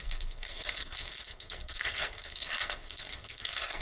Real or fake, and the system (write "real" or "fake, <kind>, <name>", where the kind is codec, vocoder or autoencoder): fake, codec, SNAC